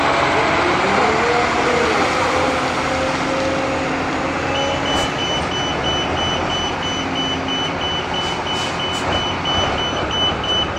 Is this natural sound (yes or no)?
yes